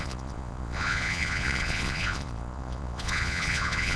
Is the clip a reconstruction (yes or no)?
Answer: yes